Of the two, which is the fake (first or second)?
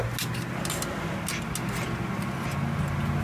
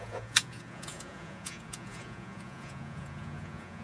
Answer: second